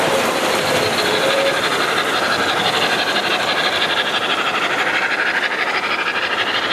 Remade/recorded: remade